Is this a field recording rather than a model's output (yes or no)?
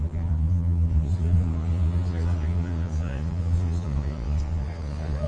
no